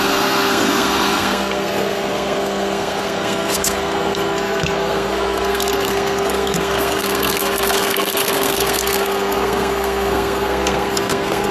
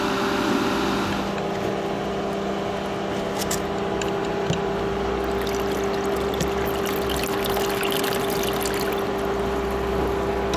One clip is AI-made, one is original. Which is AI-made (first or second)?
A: first